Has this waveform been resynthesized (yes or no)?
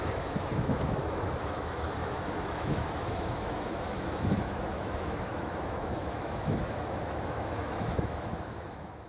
yes